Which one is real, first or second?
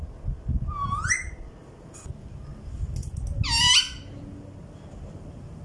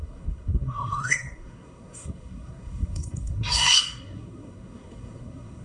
first